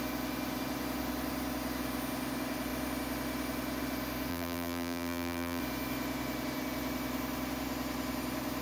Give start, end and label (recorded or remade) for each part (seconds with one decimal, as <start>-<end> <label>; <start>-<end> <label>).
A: 0.0-4.3 recorded; 4.3-5.6 remade; 5.6-8.6 recorded

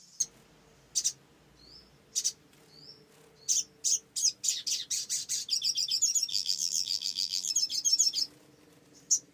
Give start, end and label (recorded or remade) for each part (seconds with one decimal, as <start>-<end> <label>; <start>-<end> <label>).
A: 0.0-6.3 recorded; 6.3-7.5 remade; 7.5-9.3 recorded